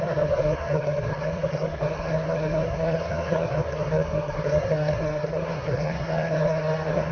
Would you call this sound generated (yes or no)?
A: yes